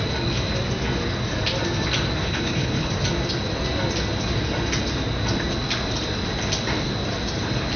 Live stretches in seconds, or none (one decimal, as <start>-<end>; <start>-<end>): 0.0-2.2; 2.9-7.8